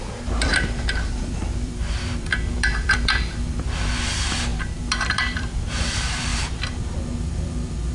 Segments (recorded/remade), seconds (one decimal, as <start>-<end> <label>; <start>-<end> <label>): 0.0-7.9 remade